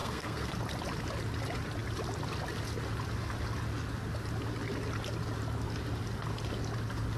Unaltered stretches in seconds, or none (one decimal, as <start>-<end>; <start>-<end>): 0.5-7.2

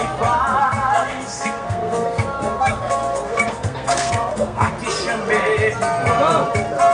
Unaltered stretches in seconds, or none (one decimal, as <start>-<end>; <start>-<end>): 0.0-0.6; 4.7-6.9

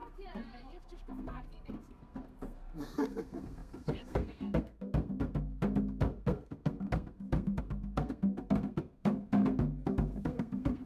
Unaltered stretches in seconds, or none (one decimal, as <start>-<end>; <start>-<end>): none